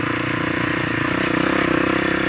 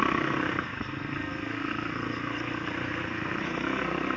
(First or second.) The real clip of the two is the first